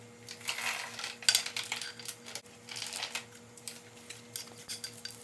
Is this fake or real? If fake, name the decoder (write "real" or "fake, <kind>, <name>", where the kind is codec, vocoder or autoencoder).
real